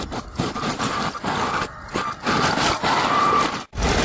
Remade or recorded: recorded